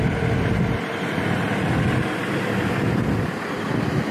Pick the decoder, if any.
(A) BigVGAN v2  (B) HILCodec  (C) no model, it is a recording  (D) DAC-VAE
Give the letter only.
C